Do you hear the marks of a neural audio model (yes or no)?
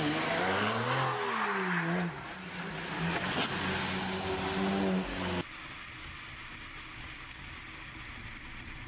no